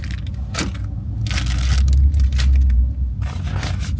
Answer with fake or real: real